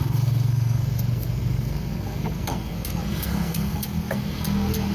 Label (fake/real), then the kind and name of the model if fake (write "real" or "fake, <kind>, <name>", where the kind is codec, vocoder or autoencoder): fake, codec, SNAC